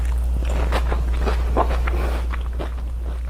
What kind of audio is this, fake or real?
real